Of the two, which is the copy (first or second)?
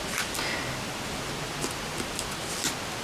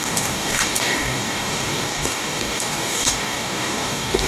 second